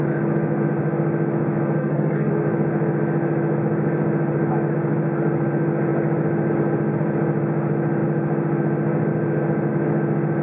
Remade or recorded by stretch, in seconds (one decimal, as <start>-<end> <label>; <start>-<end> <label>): 0.0-1.8 recorded; 1.8-2.3 remade; 2.3-10.4 recorded